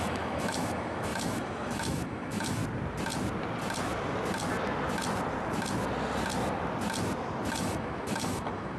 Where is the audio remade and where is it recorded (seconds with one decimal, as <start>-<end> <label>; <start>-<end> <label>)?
0.0-2.6 remade; 2.6-7.5 recorded; 7.5-8.8 remade